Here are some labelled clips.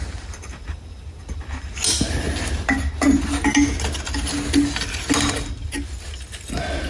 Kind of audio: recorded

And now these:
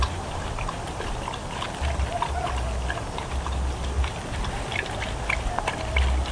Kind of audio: recorded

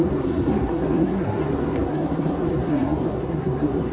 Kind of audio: remade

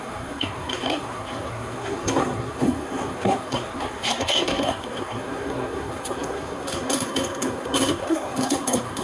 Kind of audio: remade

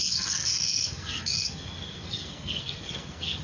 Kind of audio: remade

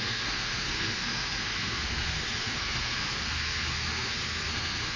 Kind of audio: remade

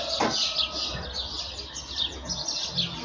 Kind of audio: recorded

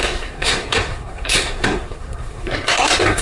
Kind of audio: remade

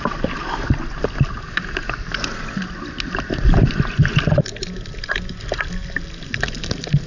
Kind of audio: recorded